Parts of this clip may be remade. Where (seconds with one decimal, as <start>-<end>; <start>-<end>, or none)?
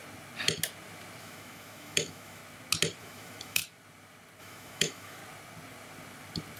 1.2-2.4; 3.0-3.6; 4.4-5.2